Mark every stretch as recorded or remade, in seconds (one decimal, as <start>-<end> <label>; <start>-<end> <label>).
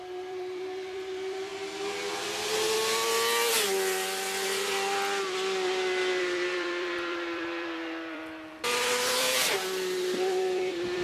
0.0-1.5 remade; 1.5-6.2 recorded; 6.2-11.0 remade